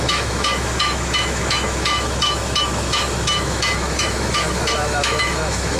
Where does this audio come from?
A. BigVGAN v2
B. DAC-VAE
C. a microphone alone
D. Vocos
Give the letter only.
B